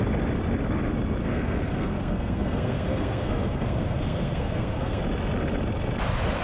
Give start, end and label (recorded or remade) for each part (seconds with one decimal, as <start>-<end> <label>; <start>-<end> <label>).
0.0-1.2 recorded; 1.2-5.0 remade; 5.0-6.4 recorded